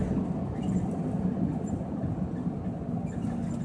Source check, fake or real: real